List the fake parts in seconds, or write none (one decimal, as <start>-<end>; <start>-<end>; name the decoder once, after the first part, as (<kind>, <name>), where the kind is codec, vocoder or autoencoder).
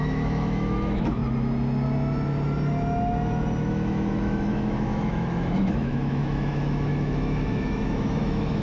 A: 0.0-1.2 (autoencoder, DAC-VAE); 3.7-8.6